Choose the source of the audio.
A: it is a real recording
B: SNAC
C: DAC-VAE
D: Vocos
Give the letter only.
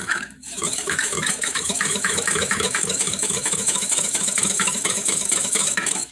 C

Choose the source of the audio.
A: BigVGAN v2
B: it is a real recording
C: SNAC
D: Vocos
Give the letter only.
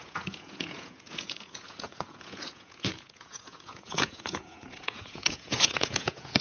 D